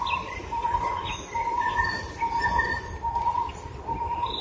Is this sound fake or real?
real